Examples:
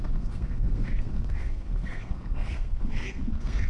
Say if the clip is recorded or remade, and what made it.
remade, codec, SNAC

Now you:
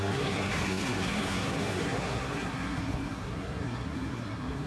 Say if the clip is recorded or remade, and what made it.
remade, codec, SNAC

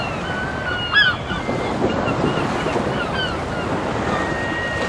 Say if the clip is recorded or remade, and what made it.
recorded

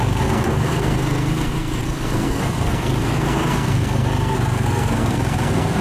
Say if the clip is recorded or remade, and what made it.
remade, codec, SNAC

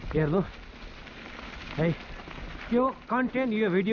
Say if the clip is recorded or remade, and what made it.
recorded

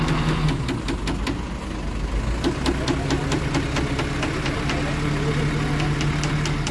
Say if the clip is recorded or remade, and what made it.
recorded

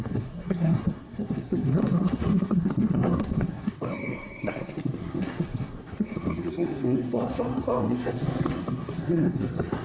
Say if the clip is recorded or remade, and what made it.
remade, codec, SNAC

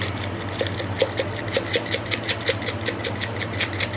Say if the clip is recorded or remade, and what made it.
recorded